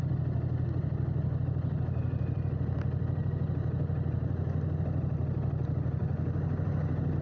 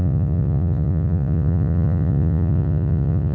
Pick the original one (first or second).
first